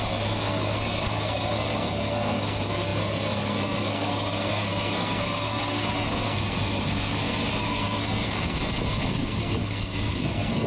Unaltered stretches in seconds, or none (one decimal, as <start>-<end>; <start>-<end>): none